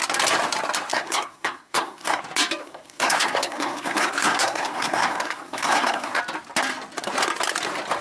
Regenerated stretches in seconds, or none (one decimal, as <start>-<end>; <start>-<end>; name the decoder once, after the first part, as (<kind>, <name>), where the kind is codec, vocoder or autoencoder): 0.9-2.2 (codec, SNAC); 2.6-6.2